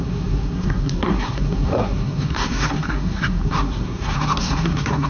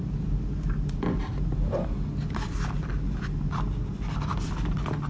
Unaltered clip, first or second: second